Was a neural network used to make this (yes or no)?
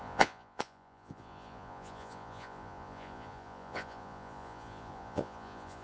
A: yes